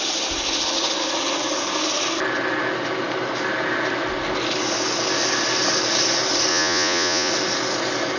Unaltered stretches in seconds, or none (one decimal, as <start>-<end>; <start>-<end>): 0.0-6.5; 7.3-8.2

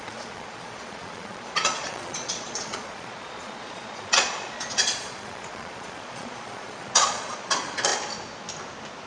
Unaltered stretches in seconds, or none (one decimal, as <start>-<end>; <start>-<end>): 7.9-9.1

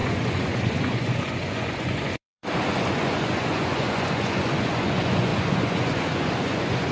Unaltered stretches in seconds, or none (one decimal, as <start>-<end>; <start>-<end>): none

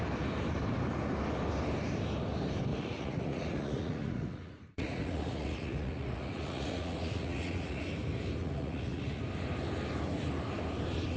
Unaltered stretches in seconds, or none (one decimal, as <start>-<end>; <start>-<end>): 0.0-2.7; 7.8-8.4; 9.2-11.2

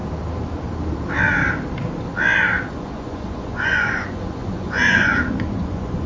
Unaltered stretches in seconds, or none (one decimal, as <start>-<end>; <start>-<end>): 0.0-2.7